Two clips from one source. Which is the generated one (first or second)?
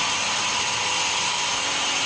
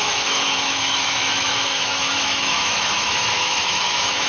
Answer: second